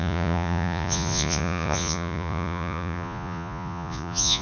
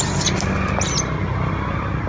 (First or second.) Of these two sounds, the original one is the second